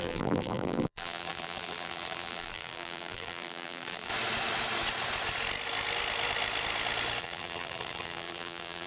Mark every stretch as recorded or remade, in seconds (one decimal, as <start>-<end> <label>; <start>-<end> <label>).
0.0-4.1 remade; 4.1-7.2 recorded; 7.2-8.9 remade